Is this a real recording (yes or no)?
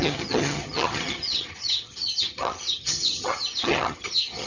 no